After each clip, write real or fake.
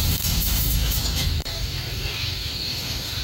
fake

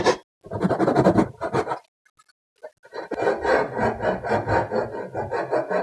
real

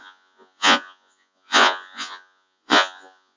fake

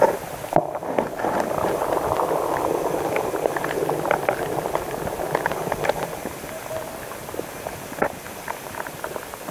real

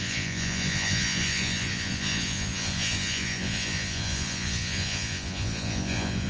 fake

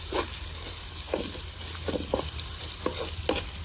real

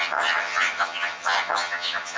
fake